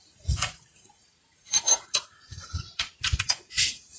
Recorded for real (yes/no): no